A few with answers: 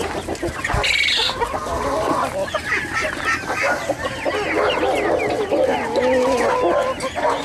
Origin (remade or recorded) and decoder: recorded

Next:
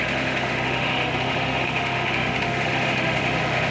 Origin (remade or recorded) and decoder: remade, autoencoder, DAC-VAE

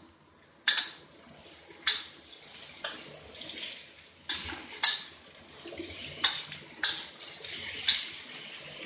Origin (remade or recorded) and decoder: recorded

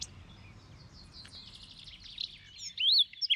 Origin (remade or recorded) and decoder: recorded